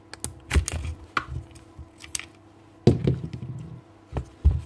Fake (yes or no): no